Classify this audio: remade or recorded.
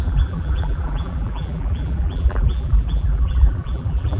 remade